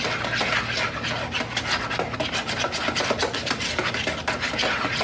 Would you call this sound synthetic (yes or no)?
no